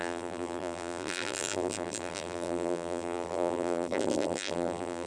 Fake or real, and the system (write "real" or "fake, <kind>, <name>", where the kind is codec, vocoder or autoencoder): fake, vocoder, BigVGAN v2